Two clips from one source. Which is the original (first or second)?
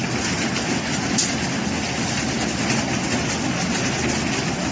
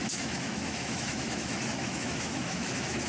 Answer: first